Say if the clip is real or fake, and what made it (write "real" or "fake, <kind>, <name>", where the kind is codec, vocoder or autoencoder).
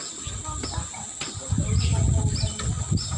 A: real